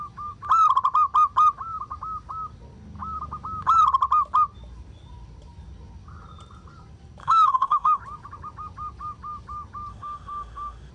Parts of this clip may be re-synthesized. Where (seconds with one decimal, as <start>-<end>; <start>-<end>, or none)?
7.2-8.0; 9.9-10.9